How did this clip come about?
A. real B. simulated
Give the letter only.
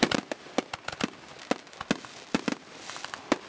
A